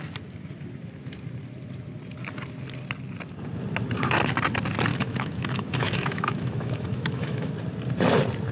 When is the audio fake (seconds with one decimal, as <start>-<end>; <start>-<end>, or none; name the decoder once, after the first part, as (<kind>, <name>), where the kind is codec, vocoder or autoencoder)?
4.9-7.5 (autoencoder, DAC-VAE)